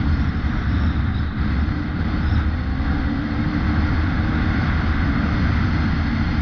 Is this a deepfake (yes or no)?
no